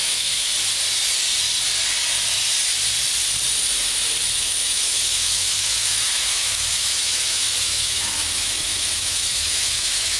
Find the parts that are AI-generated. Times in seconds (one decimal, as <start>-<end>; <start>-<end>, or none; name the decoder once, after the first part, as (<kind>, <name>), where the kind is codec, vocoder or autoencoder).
0.0-0.5 (autoencoder, DAC-VAE); 4.3-10.2